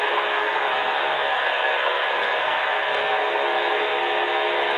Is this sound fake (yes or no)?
yes